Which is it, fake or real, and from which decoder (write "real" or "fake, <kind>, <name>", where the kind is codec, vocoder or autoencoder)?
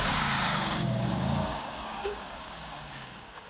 fake, codec, DAC